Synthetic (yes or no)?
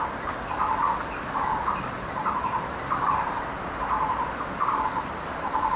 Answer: no